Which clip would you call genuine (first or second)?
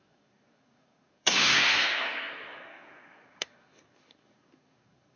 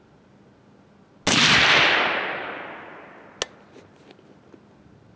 second